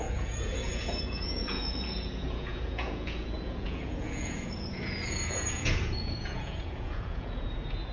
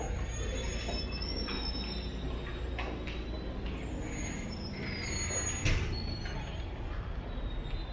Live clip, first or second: second